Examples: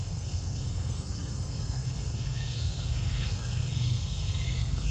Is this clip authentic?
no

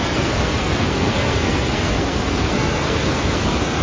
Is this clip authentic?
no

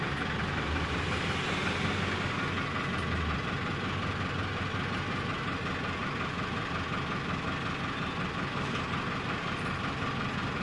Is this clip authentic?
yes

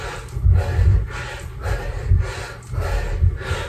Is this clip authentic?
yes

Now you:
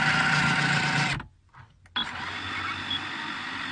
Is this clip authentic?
yes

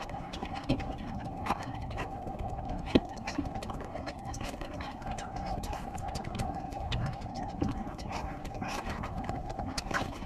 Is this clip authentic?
no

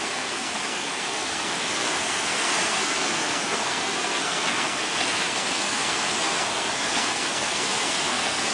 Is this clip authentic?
no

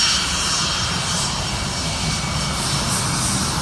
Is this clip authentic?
yes